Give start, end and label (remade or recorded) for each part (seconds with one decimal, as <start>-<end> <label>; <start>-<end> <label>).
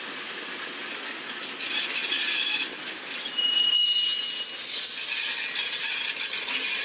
0.0-6.8 recorded